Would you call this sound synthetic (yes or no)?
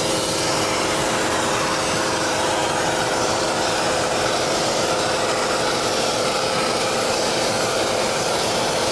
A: yes